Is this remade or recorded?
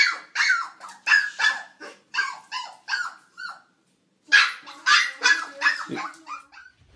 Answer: recorded